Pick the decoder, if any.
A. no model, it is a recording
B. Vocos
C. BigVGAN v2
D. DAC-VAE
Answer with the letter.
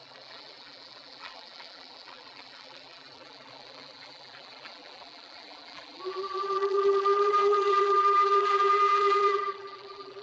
C